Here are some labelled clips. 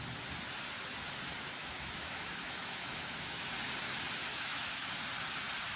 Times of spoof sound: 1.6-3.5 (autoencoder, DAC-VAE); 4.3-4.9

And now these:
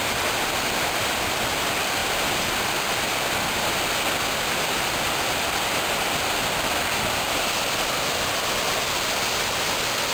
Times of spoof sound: none

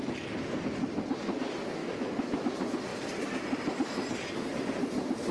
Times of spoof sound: 1.8-2.5 (autoencoder, DAC-VAE)

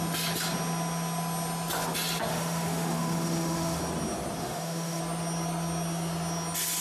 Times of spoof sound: 2.3-3.8 (autoencoder, DAC-VAE); 4.4-5.0

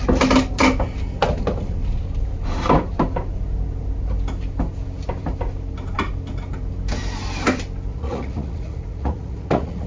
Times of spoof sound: 7.9-9.9 (vocoder, Vocos)

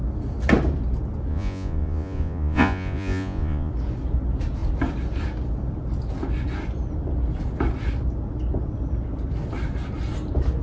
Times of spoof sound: 1.3-3.7 (vocoder, Vocos)

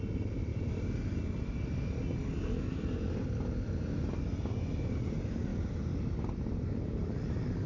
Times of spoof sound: none